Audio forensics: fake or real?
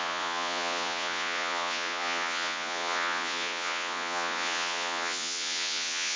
fake